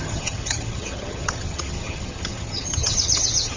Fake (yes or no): yes